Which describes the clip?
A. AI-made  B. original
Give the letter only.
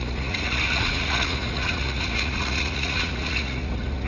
A